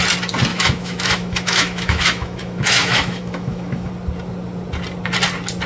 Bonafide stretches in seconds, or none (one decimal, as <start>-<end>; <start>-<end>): 0.0-0.5; 3.9-5.7